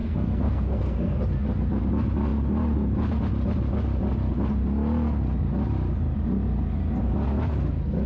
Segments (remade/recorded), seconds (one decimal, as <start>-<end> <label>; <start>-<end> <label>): 0.0-1.2 remade; 1.2-8.1 recorded